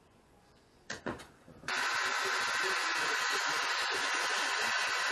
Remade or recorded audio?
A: remade